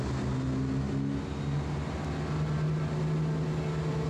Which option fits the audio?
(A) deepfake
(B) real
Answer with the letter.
B